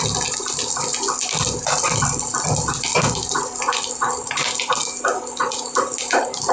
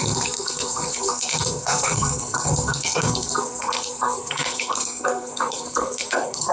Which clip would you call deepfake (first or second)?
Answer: second